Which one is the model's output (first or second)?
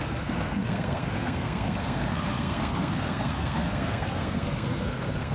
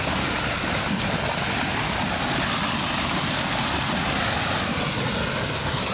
first